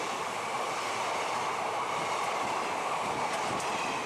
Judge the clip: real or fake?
real